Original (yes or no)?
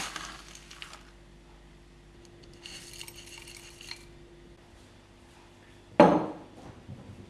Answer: yes